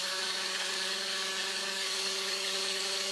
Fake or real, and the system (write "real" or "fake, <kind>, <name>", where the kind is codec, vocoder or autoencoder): fake, codec, DAC